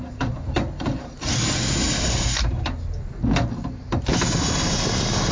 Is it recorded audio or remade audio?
recorded